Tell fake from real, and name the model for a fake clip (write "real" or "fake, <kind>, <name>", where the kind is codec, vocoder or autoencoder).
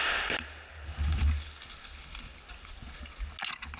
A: real